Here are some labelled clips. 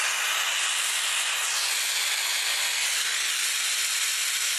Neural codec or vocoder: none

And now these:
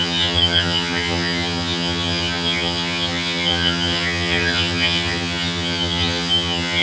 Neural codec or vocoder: vocoder, HiFi-GAN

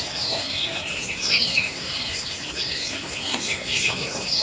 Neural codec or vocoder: codec, SNAC